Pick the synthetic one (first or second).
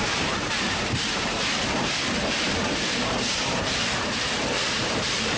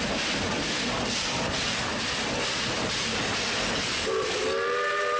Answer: first